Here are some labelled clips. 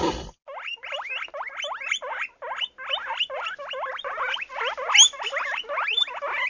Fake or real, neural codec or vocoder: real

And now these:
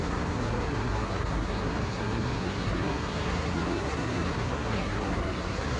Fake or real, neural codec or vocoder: fake, codec, SNAC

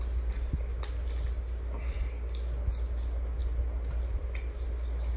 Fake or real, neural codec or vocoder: real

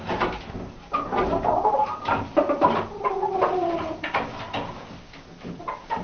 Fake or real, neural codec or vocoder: real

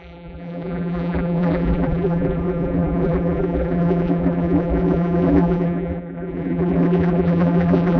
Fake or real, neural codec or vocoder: fake, vocoder, BigVGAN v2